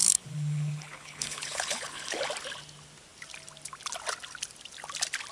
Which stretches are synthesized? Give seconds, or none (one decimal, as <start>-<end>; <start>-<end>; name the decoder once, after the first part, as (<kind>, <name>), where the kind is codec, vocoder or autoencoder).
0.0-2.2 (codec, HILCodec)